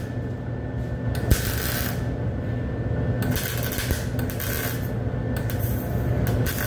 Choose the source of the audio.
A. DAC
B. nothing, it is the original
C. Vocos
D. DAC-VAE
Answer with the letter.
B